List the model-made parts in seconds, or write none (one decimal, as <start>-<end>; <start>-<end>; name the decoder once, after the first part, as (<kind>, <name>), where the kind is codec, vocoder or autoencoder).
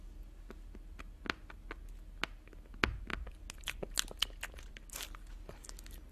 none